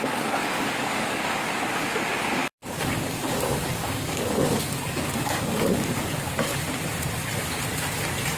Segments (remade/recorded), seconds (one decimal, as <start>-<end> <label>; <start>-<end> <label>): 0.0-6.5 remade; 6.5-8.4 recorded